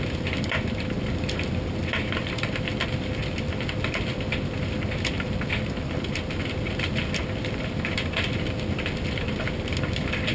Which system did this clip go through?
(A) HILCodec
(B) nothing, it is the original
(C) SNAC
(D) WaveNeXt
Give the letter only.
B